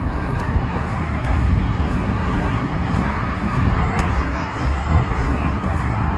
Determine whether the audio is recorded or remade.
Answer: remade